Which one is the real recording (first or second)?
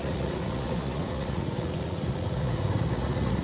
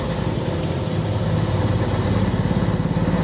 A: second